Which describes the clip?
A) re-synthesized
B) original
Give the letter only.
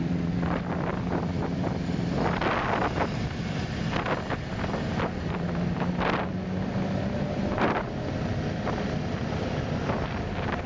B